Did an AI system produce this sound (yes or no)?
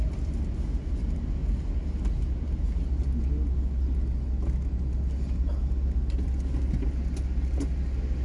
no